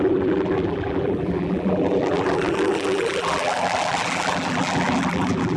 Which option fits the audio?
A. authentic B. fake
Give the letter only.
B